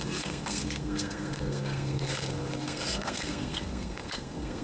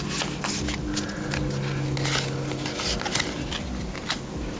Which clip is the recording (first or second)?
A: second